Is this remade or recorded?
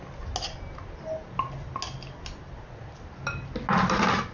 recorded